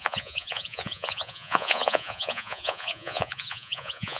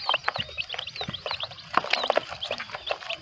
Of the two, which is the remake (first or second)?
first